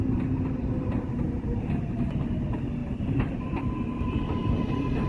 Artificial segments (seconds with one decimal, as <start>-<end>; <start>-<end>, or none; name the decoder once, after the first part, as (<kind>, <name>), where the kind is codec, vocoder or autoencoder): 2.8-3.6 (vocoder, BigVGAN v2); 4.4-5.1